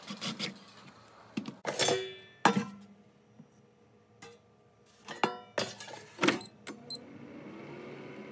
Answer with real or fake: real